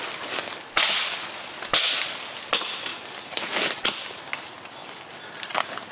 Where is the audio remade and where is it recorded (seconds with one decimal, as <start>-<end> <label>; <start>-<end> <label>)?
0.0-5.9 recorded

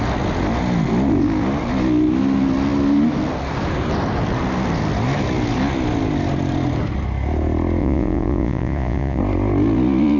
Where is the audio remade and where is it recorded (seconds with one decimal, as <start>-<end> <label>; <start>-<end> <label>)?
0.0-7.8 recorded; 7.8-9.2 remade; 9.2-10.2 recorded

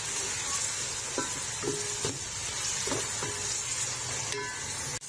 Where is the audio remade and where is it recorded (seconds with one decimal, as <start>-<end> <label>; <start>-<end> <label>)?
0.0-5.1 recorded

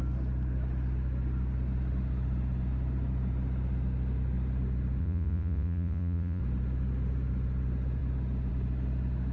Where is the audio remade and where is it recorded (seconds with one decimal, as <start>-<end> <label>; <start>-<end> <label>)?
0.0-5.0 recorded; 5.0-6.4 remade; 6.4-9.3 recorded